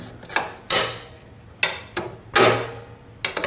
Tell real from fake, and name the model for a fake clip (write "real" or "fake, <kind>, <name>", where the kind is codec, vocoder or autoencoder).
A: real